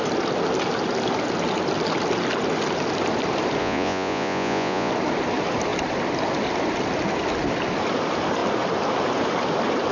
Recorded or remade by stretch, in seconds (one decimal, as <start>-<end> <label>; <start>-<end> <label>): 0.0-3.6 recorded; 3.6-4.9 remade; 4.9-9.9 recorded